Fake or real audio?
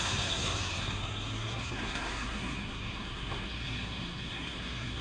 fake